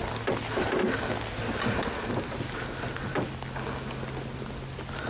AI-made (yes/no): no